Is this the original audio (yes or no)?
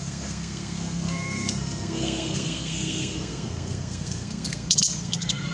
no